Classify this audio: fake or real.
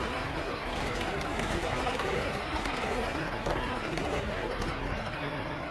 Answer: fake